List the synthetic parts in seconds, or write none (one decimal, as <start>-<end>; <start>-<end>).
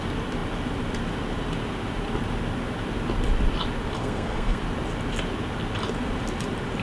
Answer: 4.0-4.6